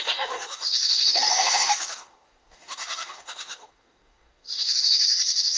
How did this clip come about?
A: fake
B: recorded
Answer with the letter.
A